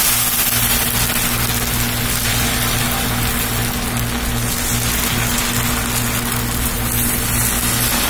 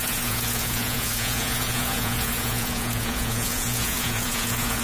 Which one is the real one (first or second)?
first